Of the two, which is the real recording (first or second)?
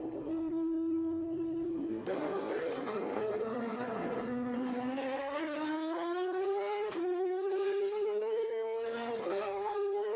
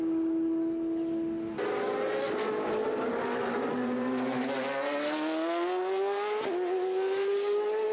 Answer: second